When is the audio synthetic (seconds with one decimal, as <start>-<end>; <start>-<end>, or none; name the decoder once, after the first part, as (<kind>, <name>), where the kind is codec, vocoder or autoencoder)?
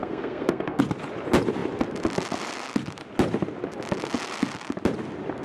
0.0-0.8 (codec, SNAC)